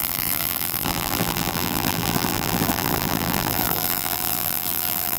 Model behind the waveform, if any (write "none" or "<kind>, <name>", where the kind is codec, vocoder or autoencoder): vocoder, BigVGAN v2